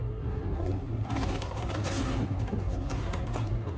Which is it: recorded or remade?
remade